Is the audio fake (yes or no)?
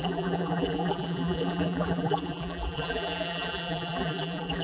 yes